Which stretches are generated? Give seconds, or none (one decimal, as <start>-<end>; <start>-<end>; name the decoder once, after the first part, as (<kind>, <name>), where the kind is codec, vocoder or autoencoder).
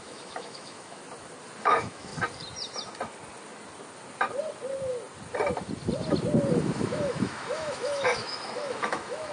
0.0-1.0 (autoencoder, DAC-VAE); 1.6-2.1; 6.6-9.3